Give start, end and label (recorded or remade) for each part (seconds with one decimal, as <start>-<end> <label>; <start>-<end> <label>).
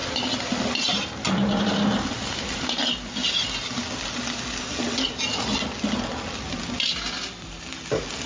0.0-8.3 recorded